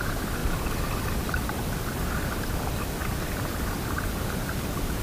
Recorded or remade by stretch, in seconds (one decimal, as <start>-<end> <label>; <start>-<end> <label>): 0.0-5.0 recorded